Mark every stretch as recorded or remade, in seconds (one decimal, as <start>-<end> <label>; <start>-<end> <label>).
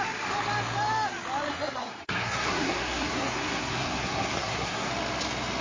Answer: 0.0-1.5 recorded; 1.5-4.9 remade; 4.9-5.6 recorded